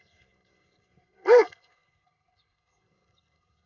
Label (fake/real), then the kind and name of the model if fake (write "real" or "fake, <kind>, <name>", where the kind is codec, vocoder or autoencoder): fake, codec, SNAC